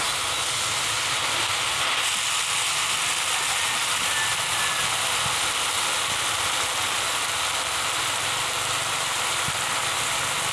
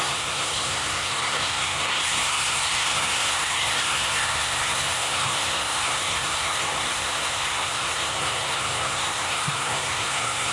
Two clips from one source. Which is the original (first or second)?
first